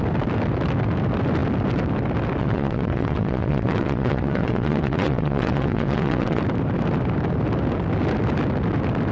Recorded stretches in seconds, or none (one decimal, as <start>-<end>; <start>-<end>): 0.0-2.4; 6.4-9.1